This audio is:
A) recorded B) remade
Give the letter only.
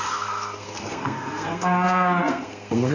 B